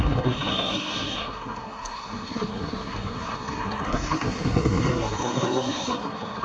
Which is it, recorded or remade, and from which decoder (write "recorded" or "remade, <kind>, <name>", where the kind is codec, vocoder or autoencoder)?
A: remade, codec, SNAC